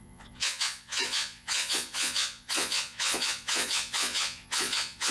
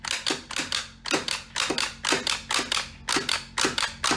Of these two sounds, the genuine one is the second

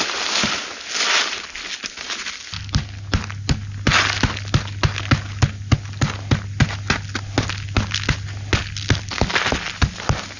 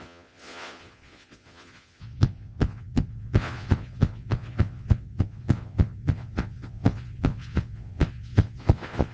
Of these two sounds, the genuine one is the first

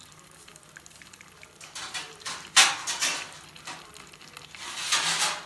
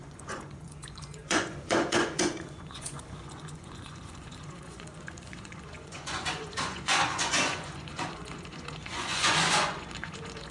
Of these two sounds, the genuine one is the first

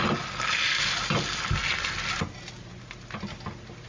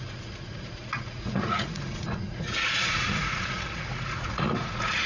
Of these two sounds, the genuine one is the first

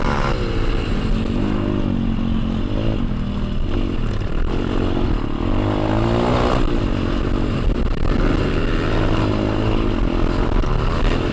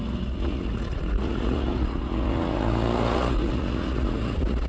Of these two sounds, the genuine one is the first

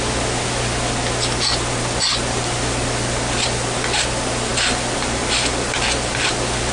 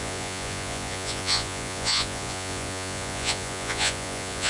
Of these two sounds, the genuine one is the first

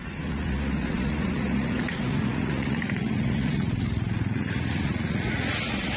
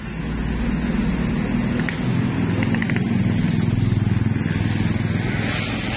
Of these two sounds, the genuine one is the second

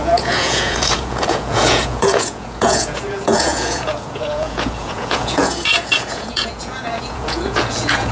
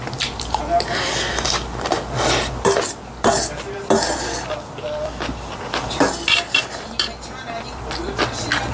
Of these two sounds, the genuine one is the second